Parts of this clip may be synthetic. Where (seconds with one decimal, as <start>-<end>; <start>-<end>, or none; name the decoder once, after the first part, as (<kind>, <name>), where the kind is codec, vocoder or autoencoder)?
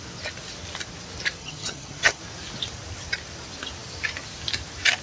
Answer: 1.4-2.2 (vocoder, HiFi-GAN)